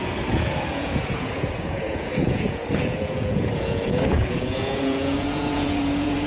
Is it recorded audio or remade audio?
remade